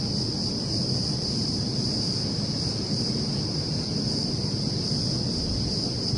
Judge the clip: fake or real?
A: real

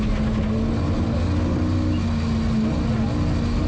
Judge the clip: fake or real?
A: real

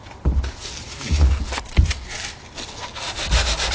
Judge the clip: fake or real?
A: real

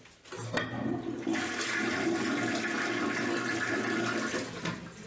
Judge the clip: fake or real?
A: real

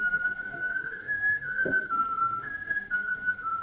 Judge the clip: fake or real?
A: fake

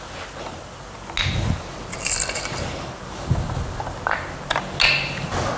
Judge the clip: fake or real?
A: real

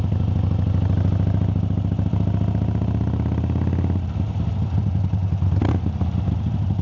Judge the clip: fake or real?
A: real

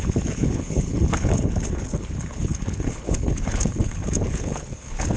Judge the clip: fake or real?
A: fake